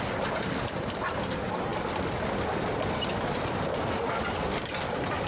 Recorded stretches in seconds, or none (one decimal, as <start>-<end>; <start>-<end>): 1.7-3.2